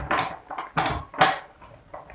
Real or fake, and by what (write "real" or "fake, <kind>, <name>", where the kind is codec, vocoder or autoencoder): real